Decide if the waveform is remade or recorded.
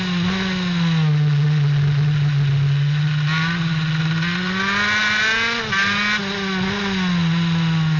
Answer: recorded